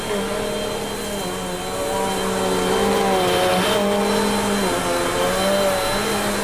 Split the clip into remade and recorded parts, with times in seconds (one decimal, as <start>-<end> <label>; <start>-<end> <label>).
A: 0.0-6.4 recorded